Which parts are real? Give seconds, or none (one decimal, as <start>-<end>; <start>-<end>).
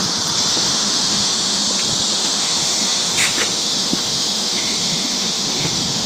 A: 0.0-0.5; 1.6-2.1